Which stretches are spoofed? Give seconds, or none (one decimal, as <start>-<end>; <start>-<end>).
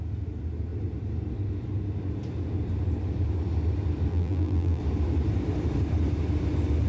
4.1-4.8